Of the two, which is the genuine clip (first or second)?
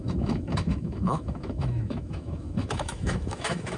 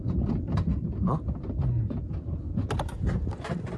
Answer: second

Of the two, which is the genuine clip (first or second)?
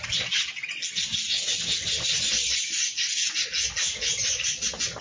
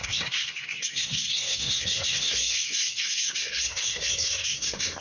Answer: first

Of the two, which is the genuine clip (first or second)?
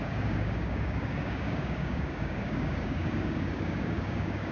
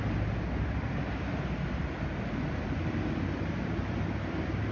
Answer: second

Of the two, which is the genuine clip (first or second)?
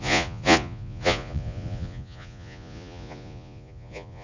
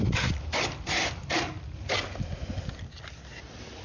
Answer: second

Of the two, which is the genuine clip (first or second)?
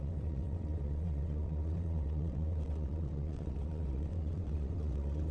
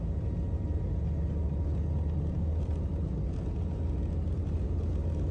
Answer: second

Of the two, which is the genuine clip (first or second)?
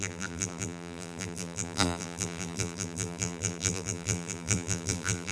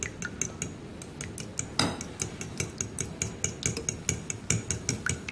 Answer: second